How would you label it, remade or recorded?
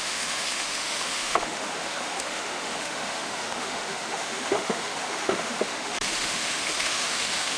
remade